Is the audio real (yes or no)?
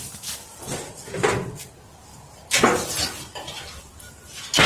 yes